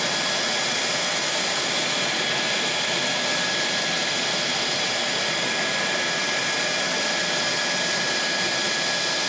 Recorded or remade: recorded